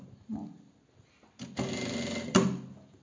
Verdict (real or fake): real